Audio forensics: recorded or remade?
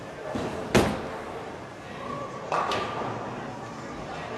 recorded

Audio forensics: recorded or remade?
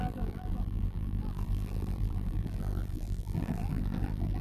remade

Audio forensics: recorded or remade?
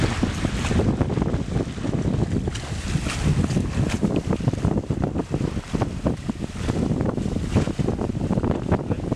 recorded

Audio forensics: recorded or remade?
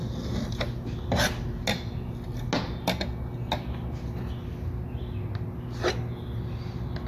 recorded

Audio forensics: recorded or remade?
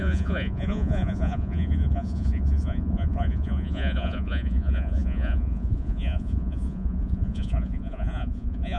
remade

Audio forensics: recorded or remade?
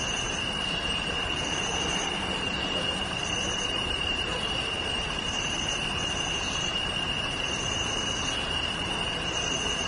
remade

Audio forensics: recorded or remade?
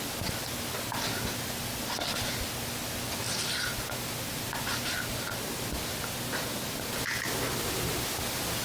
recorded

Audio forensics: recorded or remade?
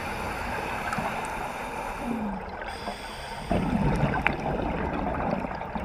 recorded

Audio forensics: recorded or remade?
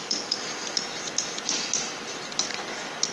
recorded